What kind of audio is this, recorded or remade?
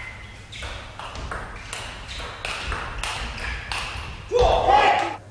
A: recorded